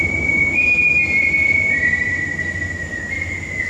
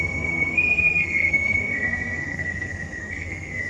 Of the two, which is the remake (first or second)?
second